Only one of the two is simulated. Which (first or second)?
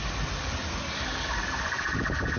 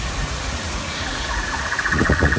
second